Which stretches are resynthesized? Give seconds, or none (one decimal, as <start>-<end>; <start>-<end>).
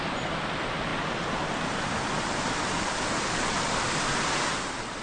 none